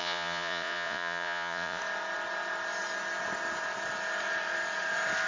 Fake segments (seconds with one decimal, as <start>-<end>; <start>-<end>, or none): 0.0-1.8